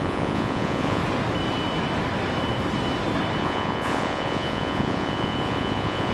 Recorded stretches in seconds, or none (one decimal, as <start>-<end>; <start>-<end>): 1.0-3.4